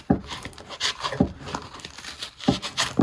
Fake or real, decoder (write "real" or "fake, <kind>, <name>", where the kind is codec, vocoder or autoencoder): real